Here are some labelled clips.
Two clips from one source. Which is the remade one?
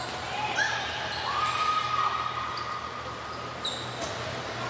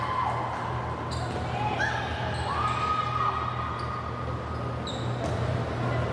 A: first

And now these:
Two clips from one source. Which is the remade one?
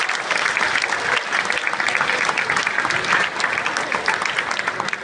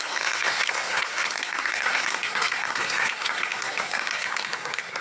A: second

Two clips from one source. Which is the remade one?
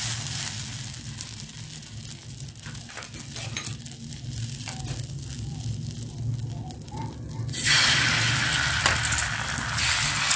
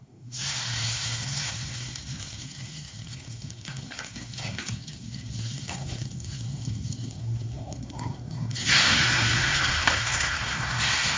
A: second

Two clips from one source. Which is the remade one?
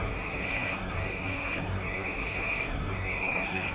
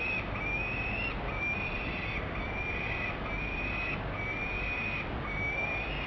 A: first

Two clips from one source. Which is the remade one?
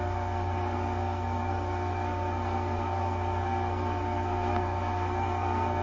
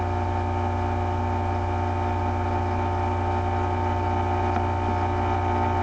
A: first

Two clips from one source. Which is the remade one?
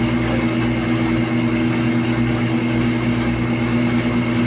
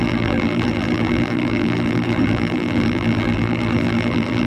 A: second